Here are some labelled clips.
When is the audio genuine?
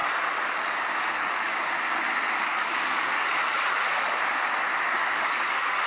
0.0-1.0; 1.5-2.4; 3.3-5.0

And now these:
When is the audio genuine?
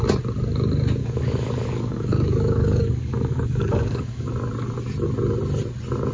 0.0-1.0; 4.3-6.1